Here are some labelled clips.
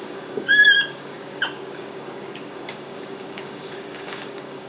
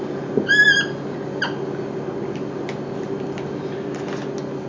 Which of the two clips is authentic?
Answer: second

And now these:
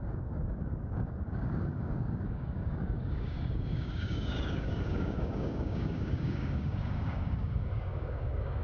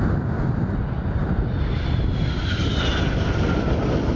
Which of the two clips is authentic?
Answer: second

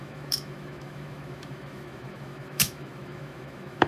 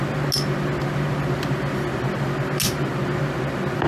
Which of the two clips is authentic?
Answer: second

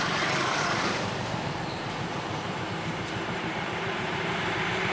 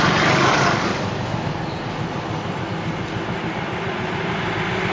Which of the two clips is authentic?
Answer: second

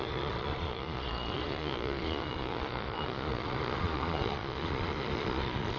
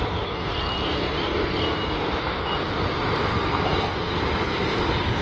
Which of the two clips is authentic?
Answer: second